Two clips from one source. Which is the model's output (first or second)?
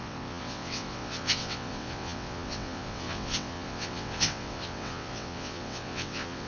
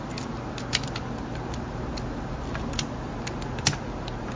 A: first